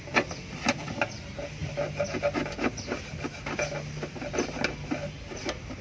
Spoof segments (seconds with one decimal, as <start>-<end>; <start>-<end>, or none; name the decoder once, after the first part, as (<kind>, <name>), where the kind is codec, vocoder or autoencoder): none